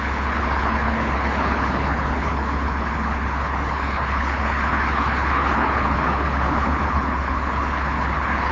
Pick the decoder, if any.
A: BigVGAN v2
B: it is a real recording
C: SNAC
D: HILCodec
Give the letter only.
D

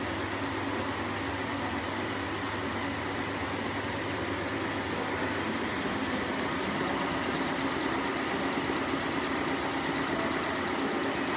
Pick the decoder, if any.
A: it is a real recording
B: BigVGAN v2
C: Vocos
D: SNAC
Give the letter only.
A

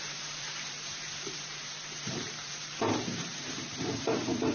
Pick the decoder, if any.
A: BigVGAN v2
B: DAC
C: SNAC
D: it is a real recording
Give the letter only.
A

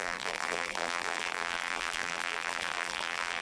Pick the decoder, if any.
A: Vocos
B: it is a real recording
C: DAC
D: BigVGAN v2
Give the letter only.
D